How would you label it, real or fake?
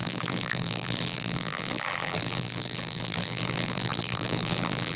fake